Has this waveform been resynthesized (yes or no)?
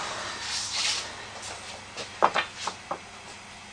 no